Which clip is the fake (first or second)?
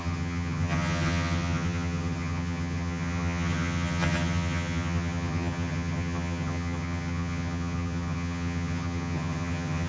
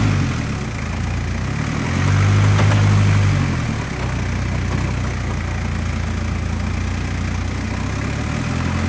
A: first